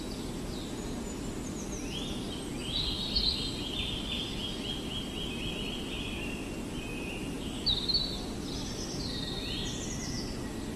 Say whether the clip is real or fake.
real